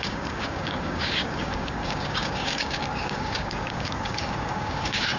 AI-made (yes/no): yes